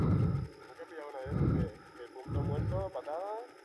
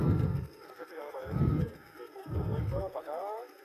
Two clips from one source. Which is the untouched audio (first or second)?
first